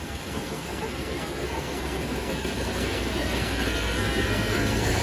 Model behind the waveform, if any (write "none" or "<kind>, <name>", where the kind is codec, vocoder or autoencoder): codec, SNAC